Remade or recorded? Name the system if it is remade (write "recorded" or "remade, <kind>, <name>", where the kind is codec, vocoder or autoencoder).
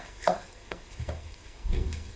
remade, codec, SNAC